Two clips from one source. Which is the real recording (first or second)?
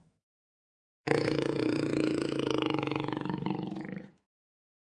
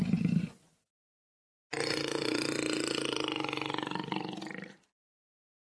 second